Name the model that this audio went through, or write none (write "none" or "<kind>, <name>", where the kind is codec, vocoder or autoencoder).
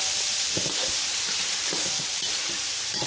vocoder, BigVGAN v2